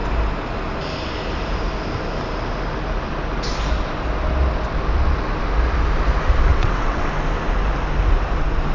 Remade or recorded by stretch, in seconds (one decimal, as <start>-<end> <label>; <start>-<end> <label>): 0.0-6.5 recorded; 6.5-7.1 remade; 7.1-8.7 recorded